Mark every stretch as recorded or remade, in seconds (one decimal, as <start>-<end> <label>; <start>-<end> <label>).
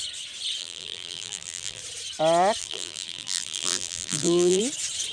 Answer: 0.0-0.6 recorded; 0.6-1.8 remade; 1.8-2.6 recorded; 2.6-4.6 remade; 4.6-5.1 recorded